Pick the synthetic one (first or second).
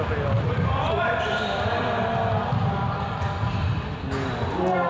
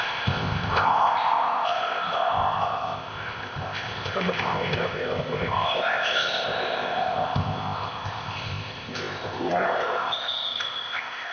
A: second